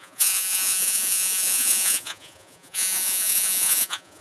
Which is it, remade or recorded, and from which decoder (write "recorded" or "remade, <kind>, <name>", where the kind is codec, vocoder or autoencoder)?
remade, vocoder, Vocos